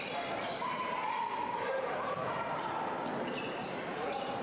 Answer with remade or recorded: remade